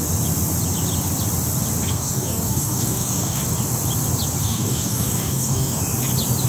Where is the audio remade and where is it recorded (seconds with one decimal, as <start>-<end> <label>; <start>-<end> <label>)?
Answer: 0.0-1.9 recorded; 1.9-3.4 remade; 3.4-4.4 recorded; 4.4-5.8 remade; 5.8-6.5 recorded